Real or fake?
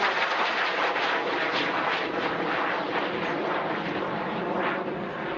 real